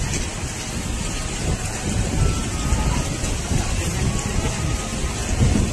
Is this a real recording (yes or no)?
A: yes